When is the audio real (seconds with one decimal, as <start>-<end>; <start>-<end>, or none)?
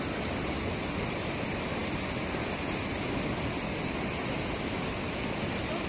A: 0.0-5.9